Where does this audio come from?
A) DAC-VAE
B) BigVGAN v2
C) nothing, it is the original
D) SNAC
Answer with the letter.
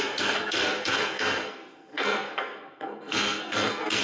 D